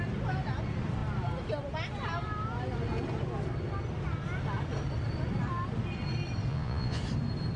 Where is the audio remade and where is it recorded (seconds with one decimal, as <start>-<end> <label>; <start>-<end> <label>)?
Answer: 0.0-6.5 recorded; 6.5-7.0 remade; 7.0-7.6 recorded